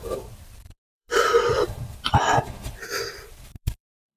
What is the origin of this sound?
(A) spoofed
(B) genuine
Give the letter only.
A